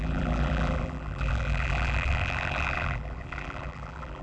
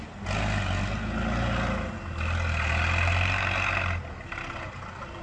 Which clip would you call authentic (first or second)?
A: second